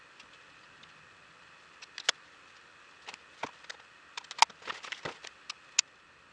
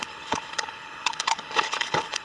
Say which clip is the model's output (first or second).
second